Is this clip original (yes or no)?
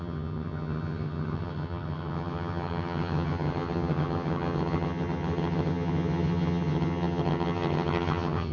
no